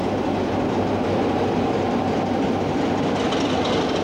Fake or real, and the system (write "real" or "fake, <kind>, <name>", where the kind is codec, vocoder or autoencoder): real